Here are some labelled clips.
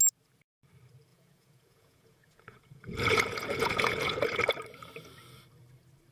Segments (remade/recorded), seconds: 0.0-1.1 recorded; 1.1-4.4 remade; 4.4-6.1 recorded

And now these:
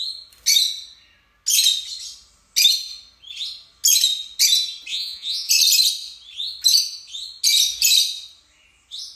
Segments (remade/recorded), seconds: 0.0-4.9 recorded; 4.9-5.5 remade; 5.5-9.2 recorded